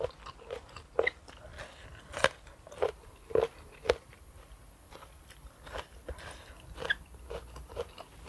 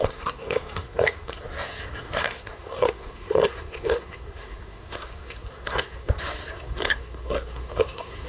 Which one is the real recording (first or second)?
first